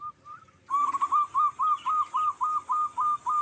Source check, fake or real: real